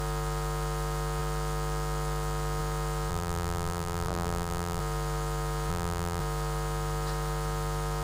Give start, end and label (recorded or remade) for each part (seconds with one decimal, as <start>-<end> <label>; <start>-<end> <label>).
0.0-3.1 recorded; 3.1-4.8 remade; 4.8-5.7 recorded; 5.7-6.2 remade; 6.2-8.0 recorded